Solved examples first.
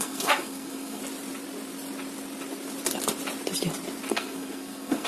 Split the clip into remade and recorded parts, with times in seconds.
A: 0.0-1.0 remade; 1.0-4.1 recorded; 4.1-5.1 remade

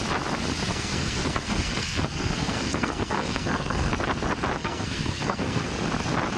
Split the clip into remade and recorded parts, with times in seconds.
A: 0.0-0.7 recorded; 0.7-3.9 remade; 3.9-4.6 recorded; 4.6-5.7 remade; 5.7-6.4 recorded

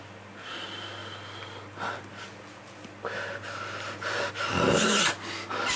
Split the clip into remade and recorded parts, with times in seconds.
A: 0.0-5.8 recorded